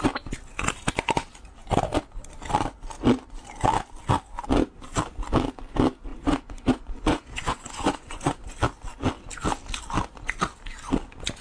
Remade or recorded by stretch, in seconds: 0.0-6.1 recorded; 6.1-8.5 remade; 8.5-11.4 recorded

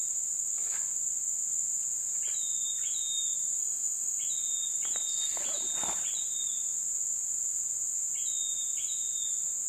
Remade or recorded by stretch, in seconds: 0.0-3.6 recorded; 3.6-4.2 remade; 4.2-9.7 recorded